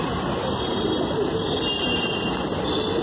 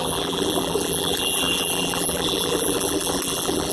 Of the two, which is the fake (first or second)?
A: second